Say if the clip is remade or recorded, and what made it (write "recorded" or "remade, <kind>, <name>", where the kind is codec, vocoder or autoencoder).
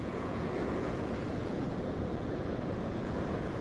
remade, vocoder, Vocos